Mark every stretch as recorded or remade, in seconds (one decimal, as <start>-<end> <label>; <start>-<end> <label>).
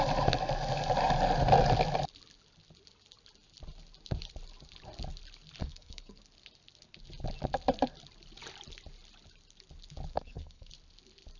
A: 0.0-5.6 recorded; 5.6-6.2 remade; 6.2-10.1 recorded; 10.1-10.7 remade; 10.7-11.4 recorded